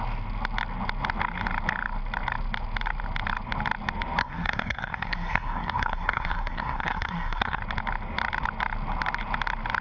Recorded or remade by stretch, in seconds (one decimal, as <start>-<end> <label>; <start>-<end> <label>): 0.0-4.2 recorded; 4.2-7.6 remade; 7.6-9.8 recorded